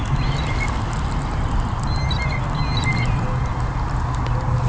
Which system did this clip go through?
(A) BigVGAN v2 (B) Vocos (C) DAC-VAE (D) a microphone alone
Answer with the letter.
D